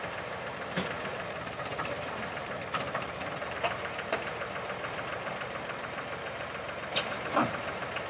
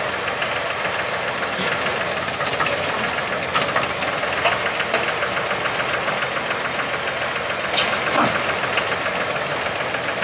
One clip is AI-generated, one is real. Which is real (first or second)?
second